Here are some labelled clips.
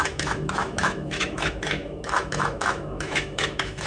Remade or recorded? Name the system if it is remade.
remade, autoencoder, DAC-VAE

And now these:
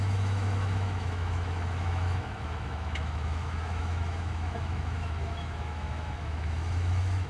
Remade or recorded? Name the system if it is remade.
remade, autoencoder, DAC-VAE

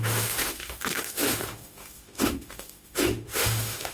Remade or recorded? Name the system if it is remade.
remade, autoencoder, DAC-VAE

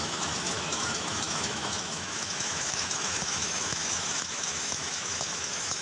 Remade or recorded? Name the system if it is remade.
remade, autoencoder, DAC-VAE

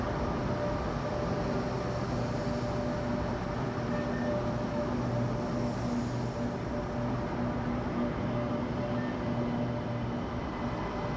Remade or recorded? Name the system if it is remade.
recorded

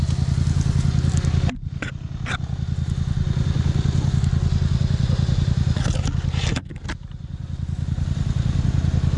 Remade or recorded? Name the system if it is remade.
recorded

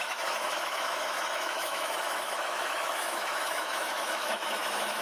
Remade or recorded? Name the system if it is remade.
remade, autoencoder, DAC-VAE